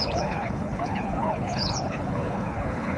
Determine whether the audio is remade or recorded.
remade